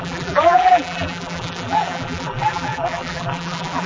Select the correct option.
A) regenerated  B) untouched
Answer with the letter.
A